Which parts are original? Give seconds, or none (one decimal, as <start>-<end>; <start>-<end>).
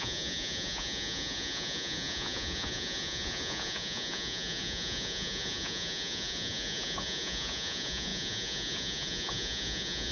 none